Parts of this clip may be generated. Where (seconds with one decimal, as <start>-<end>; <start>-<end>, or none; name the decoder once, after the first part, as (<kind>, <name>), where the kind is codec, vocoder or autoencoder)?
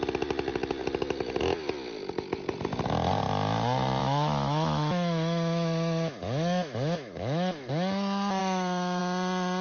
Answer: 4.0-7.7 (autoencoder, DAC-VAE); 8.4-9.0